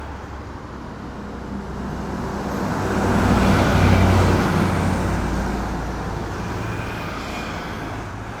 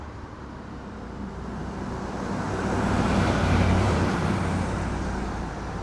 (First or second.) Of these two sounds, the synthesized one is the second